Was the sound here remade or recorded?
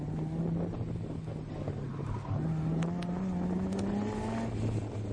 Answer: recorded